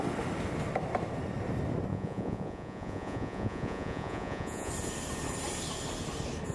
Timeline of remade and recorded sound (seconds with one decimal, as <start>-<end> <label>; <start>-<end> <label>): 0.0-1.9 recorded; 1.9-4.7 remade; 4.7-6.5 recorded